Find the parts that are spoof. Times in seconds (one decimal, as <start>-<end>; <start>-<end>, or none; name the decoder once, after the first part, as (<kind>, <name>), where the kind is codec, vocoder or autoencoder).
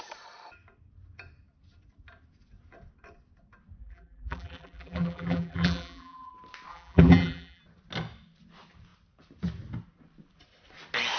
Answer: 3.8-6.3 (vocoder, BigVGAN v2); 6.7-7.6